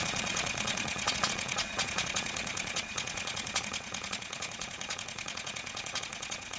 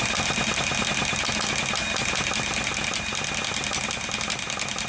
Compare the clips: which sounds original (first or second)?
second